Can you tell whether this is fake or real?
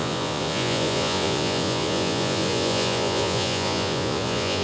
fake